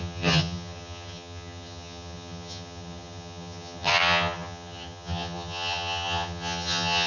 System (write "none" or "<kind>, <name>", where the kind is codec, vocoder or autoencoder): vocoder, HiFi-GAN